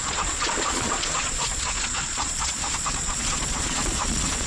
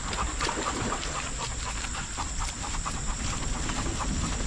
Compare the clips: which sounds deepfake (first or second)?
first